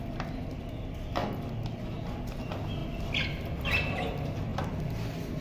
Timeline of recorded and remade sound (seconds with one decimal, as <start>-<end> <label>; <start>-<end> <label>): 0.0-4.5 recorded; 4.5-5.4 remade